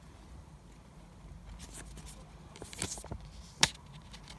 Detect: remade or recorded recorded